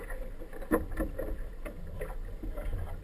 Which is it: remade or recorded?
recorded